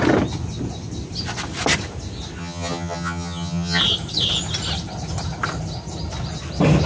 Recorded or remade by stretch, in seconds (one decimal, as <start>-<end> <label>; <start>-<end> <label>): 0.0-2.4 recorded; 2.4-3.8 remade; 3.8-6.9 recorded